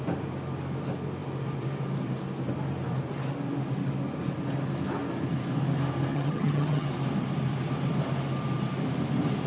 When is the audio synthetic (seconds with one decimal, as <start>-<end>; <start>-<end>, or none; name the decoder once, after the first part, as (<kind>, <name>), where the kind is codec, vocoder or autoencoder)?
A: 6.1-6.9 (vocoder, HiFi-GAN)